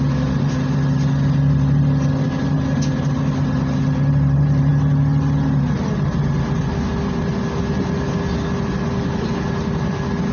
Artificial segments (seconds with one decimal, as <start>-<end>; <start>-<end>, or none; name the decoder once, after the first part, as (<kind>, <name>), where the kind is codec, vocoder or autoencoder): none